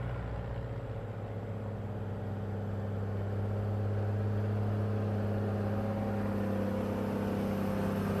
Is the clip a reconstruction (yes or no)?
no